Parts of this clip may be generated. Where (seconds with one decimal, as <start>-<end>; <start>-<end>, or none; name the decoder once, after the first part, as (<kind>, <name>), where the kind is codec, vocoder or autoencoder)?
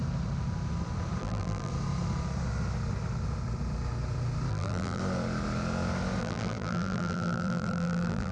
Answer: 1.2-1.7 (vocoder, BigVGAN v2); 4.5-5.0; 6.2-8.3